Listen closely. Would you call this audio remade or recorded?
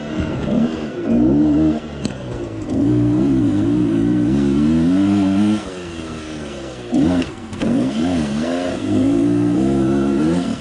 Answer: remade